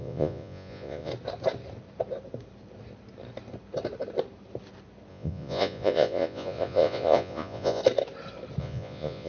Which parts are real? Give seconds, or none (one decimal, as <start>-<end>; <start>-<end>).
1.1-5.1; 7.8-8.6